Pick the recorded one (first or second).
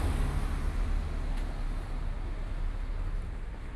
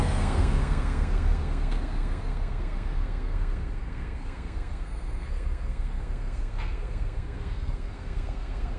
first